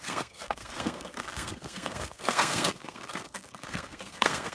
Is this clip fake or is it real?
fake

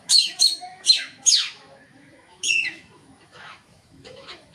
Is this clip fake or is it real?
fake